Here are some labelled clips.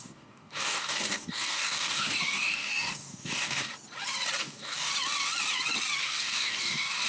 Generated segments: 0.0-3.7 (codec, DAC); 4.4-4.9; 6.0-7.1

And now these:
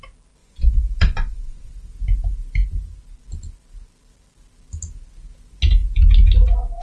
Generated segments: 0.4-1.7 (vocoder, Vocos)

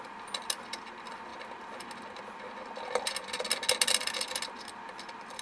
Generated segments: none